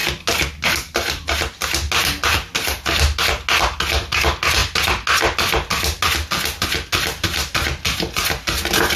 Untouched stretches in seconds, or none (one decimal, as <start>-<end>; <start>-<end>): 0.0-9.0